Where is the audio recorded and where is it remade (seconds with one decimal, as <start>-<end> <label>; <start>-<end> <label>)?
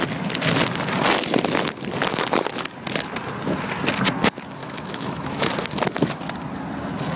0.0-4.6 recorded; 4.6-5.5 remade; 5.5-7.2 recorded